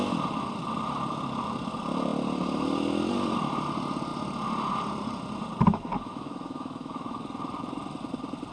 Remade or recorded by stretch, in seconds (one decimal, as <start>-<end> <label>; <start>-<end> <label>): 0.0-5.7 recorded; 5.7-7.2 remade; 7.2-8.5 recorded